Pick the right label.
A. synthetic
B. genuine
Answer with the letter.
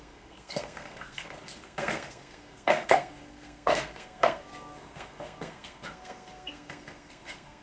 A